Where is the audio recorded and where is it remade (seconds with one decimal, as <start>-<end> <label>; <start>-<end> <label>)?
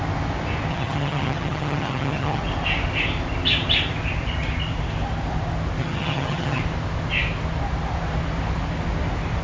0.0-0.7 recorded; 0.7-2.4 remade; 2.4-5.8 recorded; 5.8-6.6 remade; 6.6-9.4 recorded